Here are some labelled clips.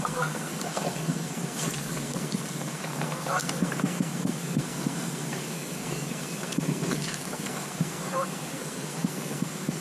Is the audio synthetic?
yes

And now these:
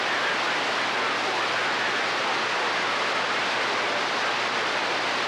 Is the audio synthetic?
no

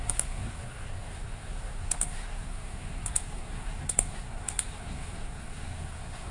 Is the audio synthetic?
yes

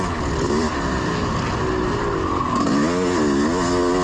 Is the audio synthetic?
no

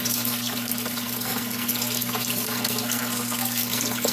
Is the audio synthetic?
yes